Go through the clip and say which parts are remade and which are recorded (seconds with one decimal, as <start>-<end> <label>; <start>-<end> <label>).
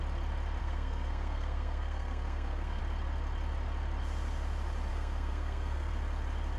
0.0-0.6 recorded; 0.6-2.8 remade; 2.8-4.9 recorded; 4.9-5.9 remade; 5.9-6.6 recorded